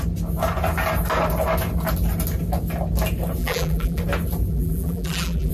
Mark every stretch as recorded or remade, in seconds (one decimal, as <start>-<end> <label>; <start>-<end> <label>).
0.0-3.4 recorded; 3.4-4.0 remade; 4.0-4.5 recorded; 4.5-5.5 remade